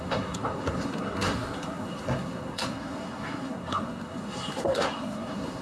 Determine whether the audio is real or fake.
fake